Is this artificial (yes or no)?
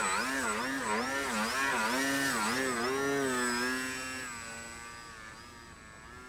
no